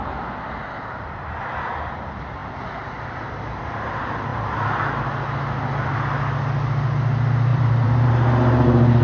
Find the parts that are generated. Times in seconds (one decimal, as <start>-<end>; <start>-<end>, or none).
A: 4.3-4.8; 7.5-8.1